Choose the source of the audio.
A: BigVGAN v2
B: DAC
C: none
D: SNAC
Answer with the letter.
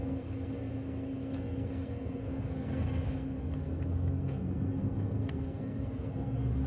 D